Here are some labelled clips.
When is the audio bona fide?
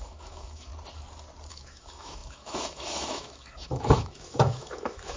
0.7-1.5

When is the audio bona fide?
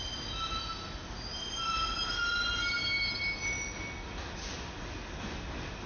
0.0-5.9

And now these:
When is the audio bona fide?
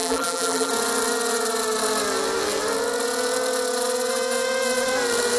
0.7-5.4